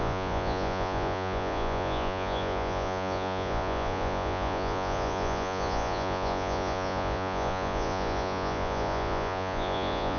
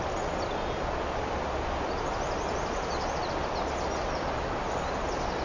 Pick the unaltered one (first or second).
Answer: second